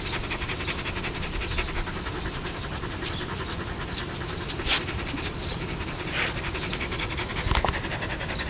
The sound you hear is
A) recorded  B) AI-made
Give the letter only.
A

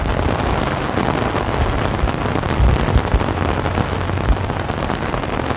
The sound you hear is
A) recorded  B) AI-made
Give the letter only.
A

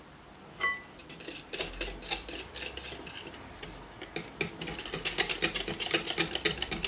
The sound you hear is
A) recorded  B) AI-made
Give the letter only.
A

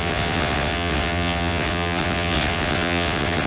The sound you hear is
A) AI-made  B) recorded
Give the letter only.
A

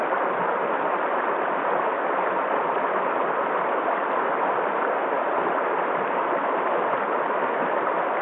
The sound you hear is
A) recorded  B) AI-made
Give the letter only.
A